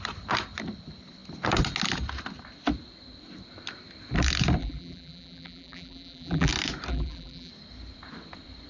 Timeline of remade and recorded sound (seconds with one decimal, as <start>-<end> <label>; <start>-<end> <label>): 0.0-4.6 recorded; 4.6-6.5 remade; 6.5-6.9 recorded; 6.9-7.5 remade; 7.5-8.7 recorded